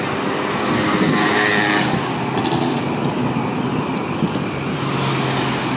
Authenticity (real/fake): real